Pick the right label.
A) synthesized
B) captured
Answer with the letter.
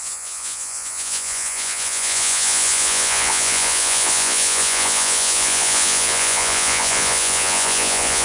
A